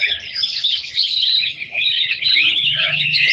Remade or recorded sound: remade